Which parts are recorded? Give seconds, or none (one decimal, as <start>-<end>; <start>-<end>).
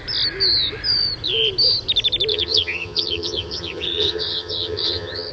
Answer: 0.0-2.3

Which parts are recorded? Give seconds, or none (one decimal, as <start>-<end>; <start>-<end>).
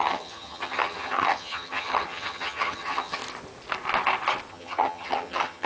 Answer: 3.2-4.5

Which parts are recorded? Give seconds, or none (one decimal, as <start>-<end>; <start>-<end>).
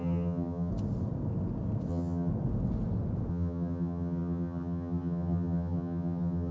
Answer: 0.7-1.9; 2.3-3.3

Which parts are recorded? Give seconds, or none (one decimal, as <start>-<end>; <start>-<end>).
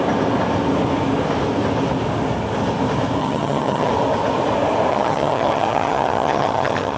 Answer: 0.0-3.2; 3.9-4.9